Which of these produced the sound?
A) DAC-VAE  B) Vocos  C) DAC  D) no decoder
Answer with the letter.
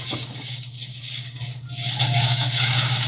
C